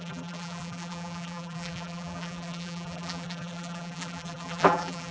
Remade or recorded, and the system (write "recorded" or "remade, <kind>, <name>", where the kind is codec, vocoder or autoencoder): remade, vocoder, BigVGAN v2